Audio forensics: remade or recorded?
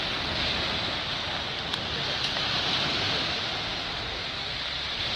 recorded